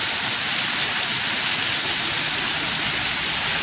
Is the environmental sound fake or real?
real